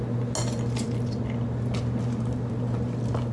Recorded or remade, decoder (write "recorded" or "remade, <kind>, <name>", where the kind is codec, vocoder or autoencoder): recorded